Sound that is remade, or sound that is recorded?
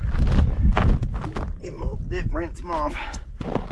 recorded